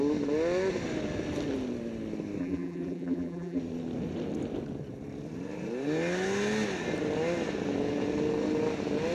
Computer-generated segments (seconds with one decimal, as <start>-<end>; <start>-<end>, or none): 2.4-3.6